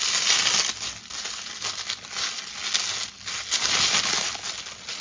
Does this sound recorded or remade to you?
recorded